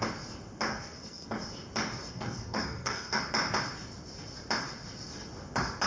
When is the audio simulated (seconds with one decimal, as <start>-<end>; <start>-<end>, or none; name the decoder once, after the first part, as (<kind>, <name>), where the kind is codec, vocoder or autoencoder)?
0.7-1.3 (codec, SNAC); 2.0-3.2